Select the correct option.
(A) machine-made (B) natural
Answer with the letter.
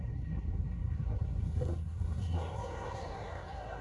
A